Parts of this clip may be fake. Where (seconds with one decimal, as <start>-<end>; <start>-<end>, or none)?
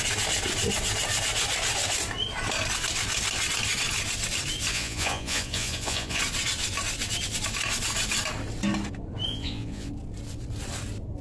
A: 4.7-6.2; 9.3-9.9